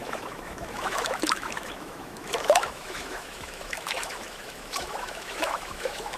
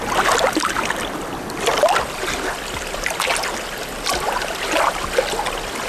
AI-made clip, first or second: first